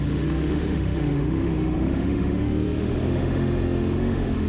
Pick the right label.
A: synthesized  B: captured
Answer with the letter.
A